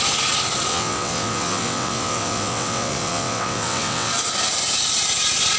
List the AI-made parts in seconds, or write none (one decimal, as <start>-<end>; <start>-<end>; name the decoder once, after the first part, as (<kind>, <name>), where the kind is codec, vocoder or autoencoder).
0.7-4.1 (vocoder, WaveNeXt)